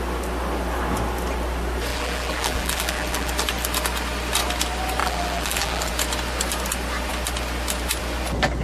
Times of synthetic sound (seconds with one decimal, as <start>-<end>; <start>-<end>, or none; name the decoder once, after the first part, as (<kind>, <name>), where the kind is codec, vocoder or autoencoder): 1.9-3.3 (vocoder, BigVGAN v2); 5.0-5.9